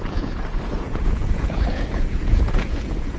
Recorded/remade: remade